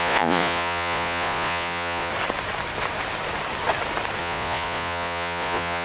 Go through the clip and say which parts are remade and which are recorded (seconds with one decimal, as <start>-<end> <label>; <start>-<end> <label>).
0.0-2.1 remade; 2.1-4.2 recorded; 4.2-5.8 remade